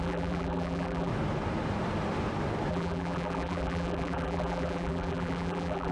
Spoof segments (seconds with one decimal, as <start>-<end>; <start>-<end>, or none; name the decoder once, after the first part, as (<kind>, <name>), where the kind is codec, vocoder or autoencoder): 0.0-1.1 (vocoder, BigVGAN v2); 2.7-5.9